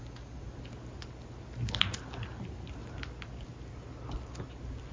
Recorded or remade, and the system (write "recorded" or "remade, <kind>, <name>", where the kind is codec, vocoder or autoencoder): recorded